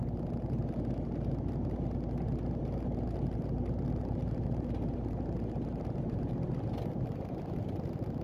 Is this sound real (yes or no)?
yes